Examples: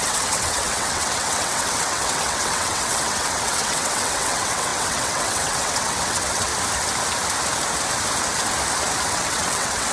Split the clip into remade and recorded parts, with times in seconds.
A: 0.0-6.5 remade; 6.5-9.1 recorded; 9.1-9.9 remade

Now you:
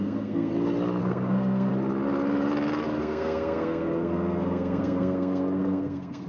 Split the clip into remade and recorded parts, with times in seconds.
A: 0.0-0.5 remade; 0.5-1.0 recorded; 1.0-1.7 remade; 1.7-3.0 recorded; 3.0-6.3 remade

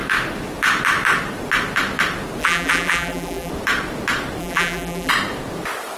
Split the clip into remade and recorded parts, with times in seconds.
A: 0.0-2.4 recorded; 2.4-3.5 remade; 3.5-4.4 recorded; 4.4-5.1 remade; 5.1-6.0 recorded

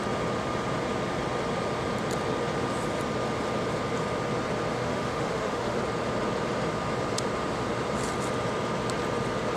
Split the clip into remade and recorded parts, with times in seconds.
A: 0.0-4.7 recorded; 4.7-5.8 remade; 5.8-9.6 recorded